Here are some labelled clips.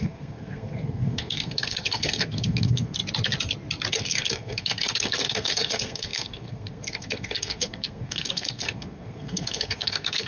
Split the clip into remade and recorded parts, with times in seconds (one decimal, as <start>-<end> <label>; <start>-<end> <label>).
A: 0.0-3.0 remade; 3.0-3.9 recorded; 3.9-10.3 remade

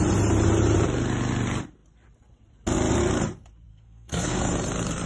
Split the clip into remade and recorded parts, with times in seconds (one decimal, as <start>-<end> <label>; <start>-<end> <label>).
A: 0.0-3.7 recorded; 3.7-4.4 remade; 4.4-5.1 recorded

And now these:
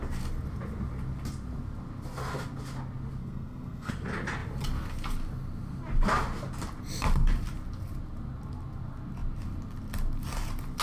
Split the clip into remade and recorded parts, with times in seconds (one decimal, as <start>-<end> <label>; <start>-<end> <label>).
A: 0.0-3.2 recorded; 3.2-3.9 remade; 3.9-10.8 recorded

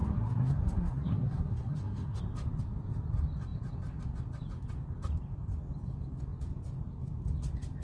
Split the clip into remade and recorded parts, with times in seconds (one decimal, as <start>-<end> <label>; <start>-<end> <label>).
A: 0.0-2.2 remade; 2.2-7.8 recorded

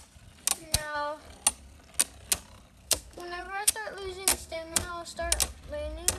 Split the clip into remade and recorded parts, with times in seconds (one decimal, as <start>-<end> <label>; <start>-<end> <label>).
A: 0.0-0.6 recorded; 0.6-1.2 remade; 1.2-2.8 recorded; 2.8-3.7 remade; 3.7-4.3 recorded; 4.3-4.9 remade; 4.9-6.2 recorded

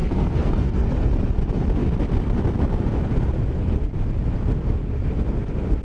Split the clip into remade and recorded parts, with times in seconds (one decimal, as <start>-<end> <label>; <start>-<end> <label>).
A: 0.0-1.1 remade; 1.1-5.8 recorded